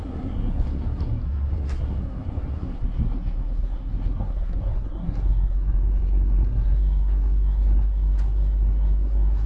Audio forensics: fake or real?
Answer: fake